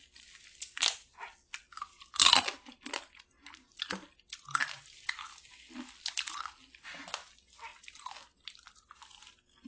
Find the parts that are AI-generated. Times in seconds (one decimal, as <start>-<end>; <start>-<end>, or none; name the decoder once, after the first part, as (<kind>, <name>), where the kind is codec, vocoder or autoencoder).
none

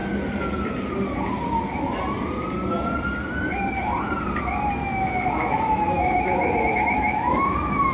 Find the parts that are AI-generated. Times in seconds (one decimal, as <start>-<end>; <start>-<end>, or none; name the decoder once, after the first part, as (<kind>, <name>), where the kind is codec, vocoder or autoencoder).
4.8-7.9 (autoencoder, DAC-VAE)

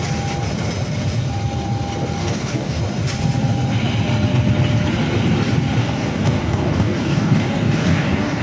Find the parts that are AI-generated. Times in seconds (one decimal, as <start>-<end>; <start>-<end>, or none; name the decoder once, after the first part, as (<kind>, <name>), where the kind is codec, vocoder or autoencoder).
2.2-2.8 (codec, DAC); 5.8-8.4

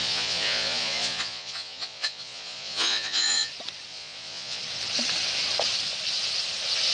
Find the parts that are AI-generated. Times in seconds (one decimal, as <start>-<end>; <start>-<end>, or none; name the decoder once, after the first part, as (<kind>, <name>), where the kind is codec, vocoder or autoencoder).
0.0-3.5 (vocoder, Vocos); 3.9-4.6